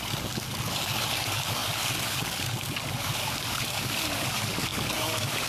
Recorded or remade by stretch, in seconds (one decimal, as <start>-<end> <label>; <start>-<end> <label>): 0.0-5.5 remade